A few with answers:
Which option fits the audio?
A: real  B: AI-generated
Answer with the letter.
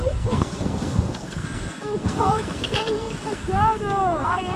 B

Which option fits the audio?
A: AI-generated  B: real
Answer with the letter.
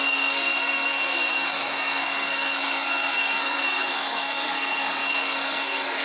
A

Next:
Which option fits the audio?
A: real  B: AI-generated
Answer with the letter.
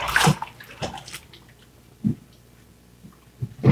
A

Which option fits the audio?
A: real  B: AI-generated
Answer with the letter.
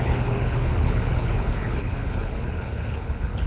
B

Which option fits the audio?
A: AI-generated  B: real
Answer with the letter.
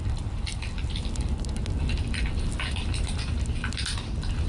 B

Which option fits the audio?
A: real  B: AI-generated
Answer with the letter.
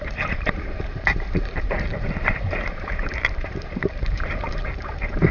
B